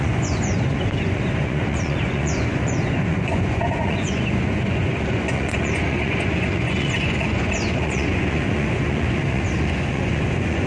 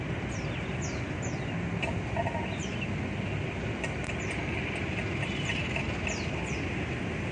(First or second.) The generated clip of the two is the first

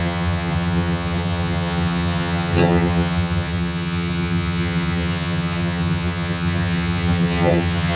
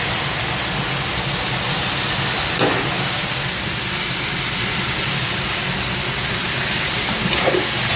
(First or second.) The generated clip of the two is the first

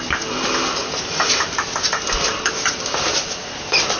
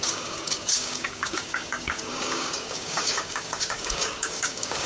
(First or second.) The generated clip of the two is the second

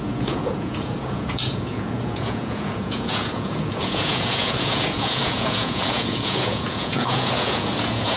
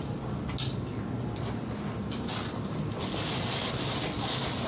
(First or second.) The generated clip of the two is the first